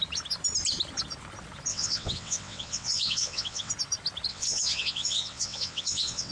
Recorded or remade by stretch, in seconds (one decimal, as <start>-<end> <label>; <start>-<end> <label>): 0.0-1.7 recorded; 1.7-3.7 remade; 3.7-4.3 recorded; 4.3-6.3 remade